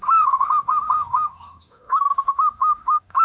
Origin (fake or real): fake